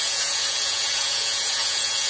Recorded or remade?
remade